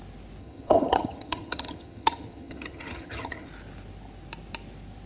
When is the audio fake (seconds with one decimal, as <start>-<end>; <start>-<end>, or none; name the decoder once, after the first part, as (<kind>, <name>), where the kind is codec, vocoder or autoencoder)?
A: 0.4-3.5 (vocoder, HiFi-GAN)